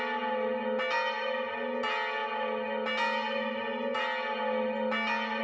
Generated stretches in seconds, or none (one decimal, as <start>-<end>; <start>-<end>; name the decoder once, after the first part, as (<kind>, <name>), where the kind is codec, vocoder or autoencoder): none